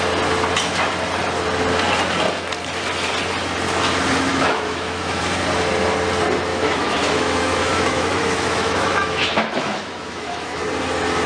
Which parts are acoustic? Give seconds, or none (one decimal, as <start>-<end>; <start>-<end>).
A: 0.0-4.3; 5.2-6.5; 10.6-11.3